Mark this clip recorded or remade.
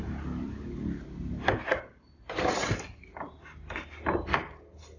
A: recorded